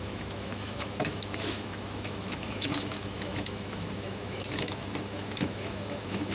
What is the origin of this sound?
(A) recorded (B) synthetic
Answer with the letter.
B